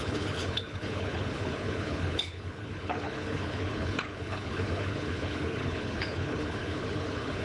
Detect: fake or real fake